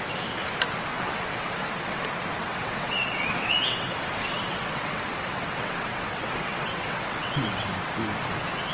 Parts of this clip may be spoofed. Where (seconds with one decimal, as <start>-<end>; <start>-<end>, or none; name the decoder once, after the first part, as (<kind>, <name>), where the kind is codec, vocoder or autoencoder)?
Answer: 0.9-2.0 (vocoder, WaveNeXt); 2.5-7.7